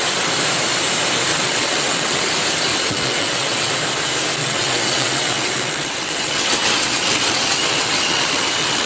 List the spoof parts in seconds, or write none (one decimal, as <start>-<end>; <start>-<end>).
1.3-2.3; 2.7-3.7; 4.4-8.9

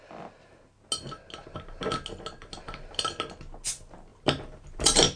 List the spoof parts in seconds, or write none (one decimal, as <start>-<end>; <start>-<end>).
none

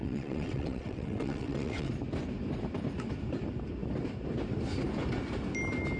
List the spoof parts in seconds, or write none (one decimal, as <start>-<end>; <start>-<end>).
0.0-1.9

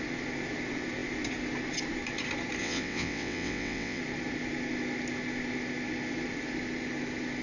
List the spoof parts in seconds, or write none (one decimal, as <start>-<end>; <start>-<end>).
2.6-4.0

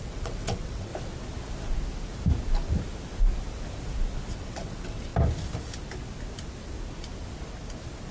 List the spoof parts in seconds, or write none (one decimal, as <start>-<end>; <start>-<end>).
0.0-0.9; 4.3-5.1